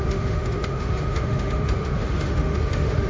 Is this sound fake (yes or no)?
yes